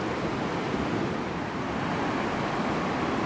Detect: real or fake real